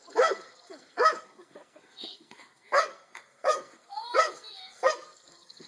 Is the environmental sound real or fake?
fake